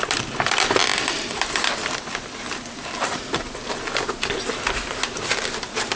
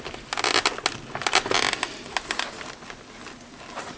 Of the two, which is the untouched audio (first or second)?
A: second